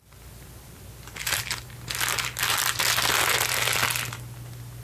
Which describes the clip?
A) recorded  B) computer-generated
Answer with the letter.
A